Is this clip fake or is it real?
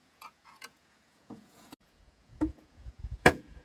fake